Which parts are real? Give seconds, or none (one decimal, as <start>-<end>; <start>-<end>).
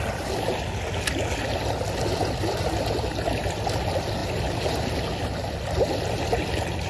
0.0-4.2; 4.9-6.9